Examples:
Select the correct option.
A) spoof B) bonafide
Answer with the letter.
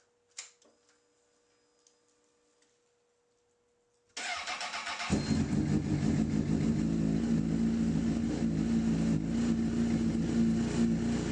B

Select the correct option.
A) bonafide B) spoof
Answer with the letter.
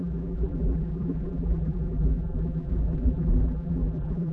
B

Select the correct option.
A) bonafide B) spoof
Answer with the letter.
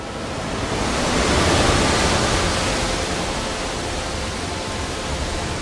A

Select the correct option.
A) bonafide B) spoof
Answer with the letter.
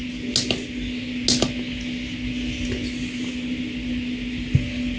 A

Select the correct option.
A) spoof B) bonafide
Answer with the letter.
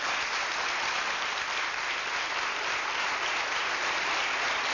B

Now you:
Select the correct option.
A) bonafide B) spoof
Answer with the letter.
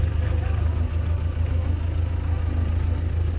A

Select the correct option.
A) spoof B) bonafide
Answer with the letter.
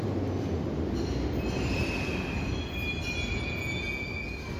B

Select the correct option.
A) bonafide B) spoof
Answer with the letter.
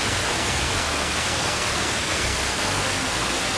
B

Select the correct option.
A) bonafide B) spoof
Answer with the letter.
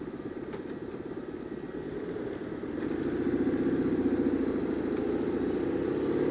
A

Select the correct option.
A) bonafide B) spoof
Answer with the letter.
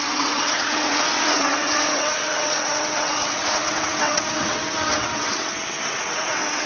B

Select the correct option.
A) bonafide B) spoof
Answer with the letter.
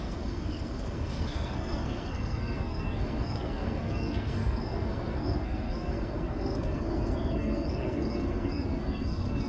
B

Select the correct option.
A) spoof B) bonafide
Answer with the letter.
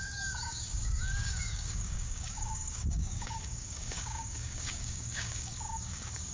A